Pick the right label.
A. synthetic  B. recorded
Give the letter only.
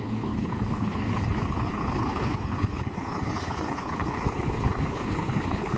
A